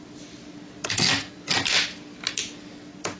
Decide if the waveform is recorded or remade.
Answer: recorded